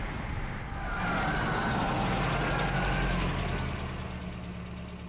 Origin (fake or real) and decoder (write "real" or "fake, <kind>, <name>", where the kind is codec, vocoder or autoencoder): real